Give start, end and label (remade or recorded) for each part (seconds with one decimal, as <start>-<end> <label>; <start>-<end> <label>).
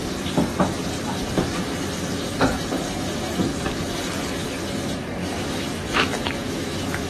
0.0-5.2 recorded; 5.2-7.1 remade